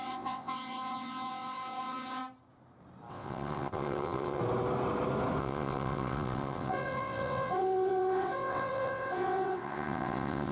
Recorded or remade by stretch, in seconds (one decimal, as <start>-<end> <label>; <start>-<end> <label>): 0.0-2.2 remade; 2.2-3.1 recorded; 3.1-4.4 remade; 4.4-5.4 recorded; 5.4-10.5 remade